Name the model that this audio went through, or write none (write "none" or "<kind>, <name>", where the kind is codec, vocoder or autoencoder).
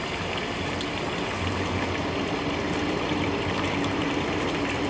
none